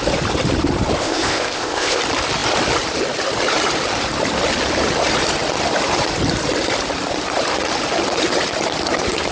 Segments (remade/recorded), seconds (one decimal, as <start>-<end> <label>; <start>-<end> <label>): 0.0-1.0 recorded; 1.0-2.0 remade; 2.0-9.3 recorded